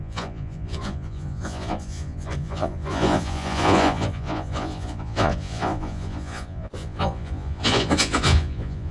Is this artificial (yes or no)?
yes